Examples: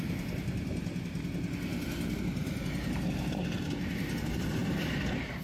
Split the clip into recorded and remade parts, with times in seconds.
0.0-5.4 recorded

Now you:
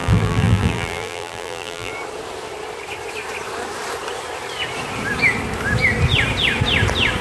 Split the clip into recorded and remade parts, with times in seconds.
0.0-1.9 remade; 1.9-7.2 recorded